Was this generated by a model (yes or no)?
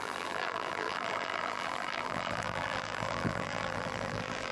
yes